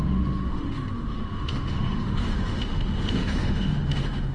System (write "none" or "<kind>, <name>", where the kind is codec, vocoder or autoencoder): autoencoder, DAC-VAE